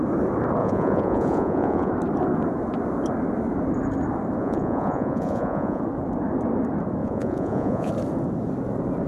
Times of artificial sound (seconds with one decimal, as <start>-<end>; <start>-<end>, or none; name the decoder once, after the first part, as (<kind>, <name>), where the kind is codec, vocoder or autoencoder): 0.6-1.9 (vocoder, Vocos); 4.4-5.8; 7.0-7.9